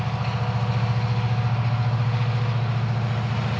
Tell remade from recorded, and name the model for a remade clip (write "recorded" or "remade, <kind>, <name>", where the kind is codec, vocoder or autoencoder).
recorded